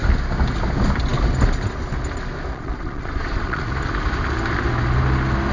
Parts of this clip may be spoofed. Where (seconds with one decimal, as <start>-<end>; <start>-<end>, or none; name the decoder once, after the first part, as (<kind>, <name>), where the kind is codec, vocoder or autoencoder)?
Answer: 2.5-3.7 (vocoder, Vocos)